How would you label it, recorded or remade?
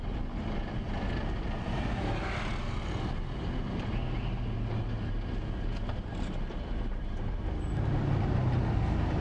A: recorded